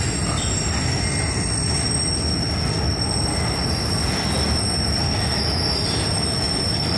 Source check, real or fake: real